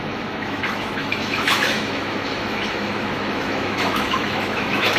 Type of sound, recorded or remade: remade